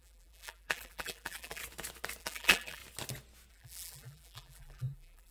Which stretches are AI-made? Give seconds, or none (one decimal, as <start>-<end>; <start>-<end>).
0.0-1.6; 2.2-2.8; 3.5-5.3